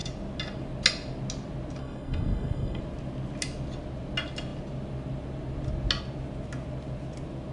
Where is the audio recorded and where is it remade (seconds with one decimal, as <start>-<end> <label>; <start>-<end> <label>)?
0.0-1.8 recorded; 1.8-2.8 remade; 2.8-7.5 recorded

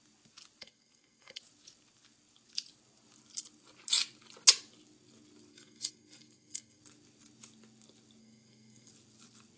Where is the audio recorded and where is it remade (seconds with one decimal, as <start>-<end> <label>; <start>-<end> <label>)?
0.0-0.6 recorded; 0.6-1.4 remade; 1.4-5.5 recorded; 5.5-6.8 remade; 6.8-8.2 recorded; 8.2-8.9 remade; 8.9-9.6 recorded

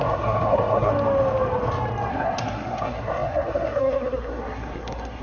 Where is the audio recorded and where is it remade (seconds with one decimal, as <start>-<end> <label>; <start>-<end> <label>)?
0.0-0.9 remade; 0.9-2.1 recorded; 2.1-5.2 remade

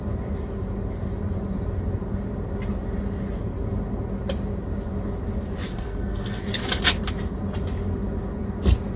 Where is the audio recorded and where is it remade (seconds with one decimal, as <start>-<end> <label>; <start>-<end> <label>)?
0.0-5.7 recorded; 5.7-6.4 remade; 6.4-9.0 recorded

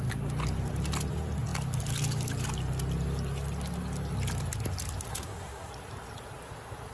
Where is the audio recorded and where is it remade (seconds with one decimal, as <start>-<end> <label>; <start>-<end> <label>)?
0.0-5.1 recorded; 5.1-5.7 remade; 5.7-6.9 recorded